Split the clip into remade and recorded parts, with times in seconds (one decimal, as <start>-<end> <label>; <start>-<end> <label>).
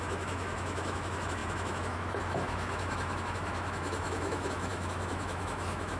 0.0-6.0 remade